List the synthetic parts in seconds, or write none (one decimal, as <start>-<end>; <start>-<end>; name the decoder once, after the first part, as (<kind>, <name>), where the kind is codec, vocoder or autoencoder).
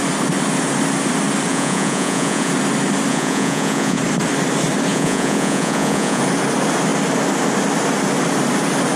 1.5-2.5 (vocoder, Vocos); 3.1-4.0; 4.9-6.2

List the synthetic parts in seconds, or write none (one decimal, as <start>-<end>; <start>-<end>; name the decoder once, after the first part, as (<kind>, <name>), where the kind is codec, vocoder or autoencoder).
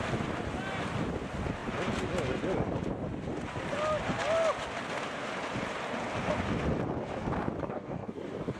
7.6-8.6 (codec, DAC)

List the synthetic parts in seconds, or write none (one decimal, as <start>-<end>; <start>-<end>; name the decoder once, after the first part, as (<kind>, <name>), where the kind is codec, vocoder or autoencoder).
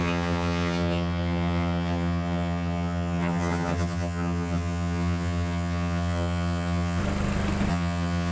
0.0-7.0 (vocoder, HiFi-GAN); 7.7-8.3